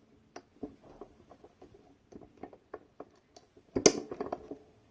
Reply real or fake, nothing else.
real